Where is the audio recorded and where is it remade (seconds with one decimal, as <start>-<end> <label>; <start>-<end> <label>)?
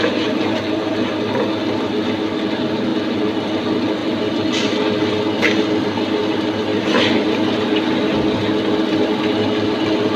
0.0-10.2 recorded